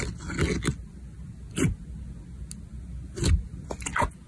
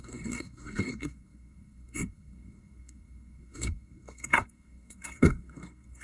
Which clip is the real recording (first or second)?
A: first